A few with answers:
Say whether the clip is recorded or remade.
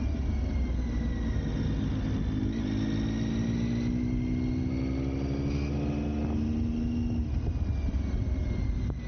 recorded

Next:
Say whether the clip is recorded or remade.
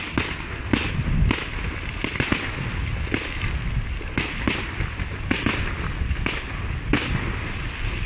recorded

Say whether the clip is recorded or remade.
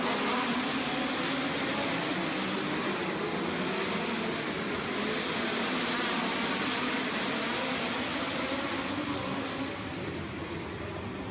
recorded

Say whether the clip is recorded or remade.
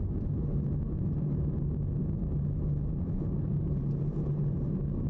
recorded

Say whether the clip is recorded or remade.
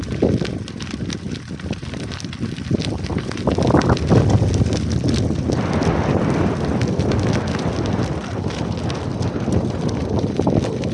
recorded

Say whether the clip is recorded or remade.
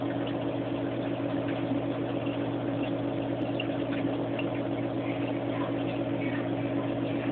recorded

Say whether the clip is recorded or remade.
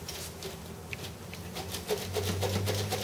recorded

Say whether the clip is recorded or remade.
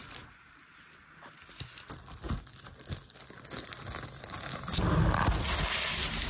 recorded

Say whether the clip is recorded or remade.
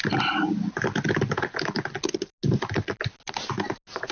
recorded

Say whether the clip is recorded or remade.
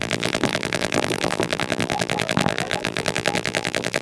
remade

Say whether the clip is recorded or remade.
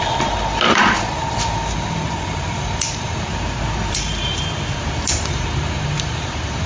remade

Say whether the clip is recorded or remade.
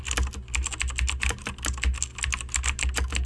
recorded